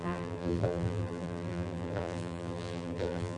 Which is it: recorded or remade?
remade